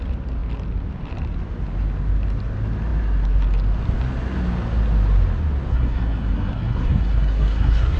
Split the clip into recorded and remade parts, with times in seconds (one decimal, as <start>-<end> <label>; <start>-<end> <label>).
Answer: 0.0-5.7 recorded; 5.7-8.0 remade